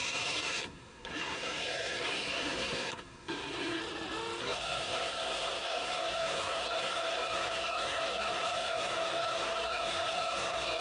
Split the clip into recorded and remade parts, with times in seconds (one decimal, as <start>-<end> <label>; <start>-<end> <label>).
0.0-3.8 remade; 3.8-4.4 recorded; 4.4-10.8 remade